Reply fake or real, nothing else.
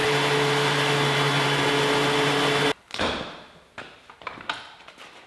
real